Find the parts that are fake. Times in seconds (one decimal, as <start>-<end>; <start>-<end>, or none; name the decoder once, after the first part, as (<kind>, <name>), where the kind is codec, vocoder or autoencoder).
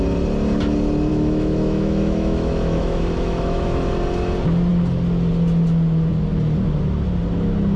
1.1-3.9 (autoencoder, DAC-VAE)